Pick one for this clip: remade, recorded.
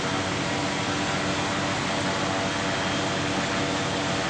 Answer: recorded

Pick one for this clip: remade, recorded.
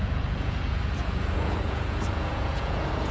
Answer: remade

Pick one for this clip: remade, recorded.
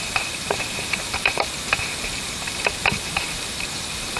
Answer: remade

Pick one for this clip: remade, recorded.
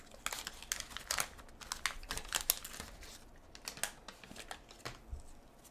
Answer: recorded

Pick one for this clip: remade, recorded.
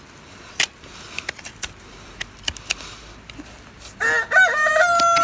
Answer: recorded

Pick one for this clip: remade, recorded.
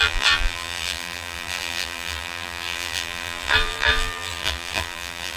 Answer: remade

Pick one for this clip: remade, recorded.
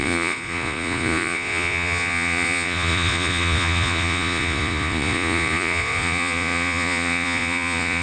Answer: remade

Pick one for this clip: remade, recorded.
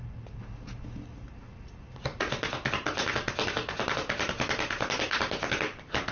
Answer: recorded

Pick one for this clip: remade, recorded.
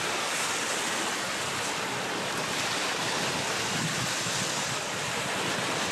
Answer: recorded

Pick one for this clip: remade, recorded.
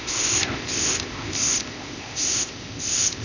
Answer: remade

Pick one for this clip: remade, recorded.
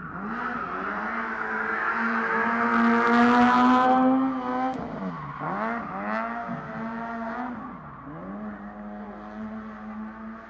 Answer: recorded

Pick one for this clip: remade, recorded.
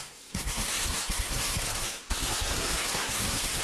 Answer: remade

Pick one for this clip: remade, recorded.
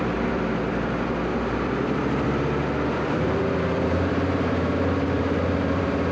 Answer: remade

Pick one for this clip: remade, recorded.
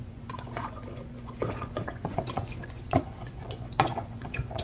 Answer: remade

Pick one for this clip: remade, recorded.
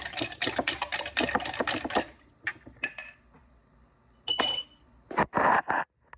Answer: recorded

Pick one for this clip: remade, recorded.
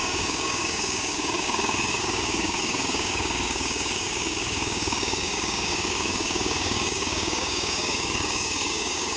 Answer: remade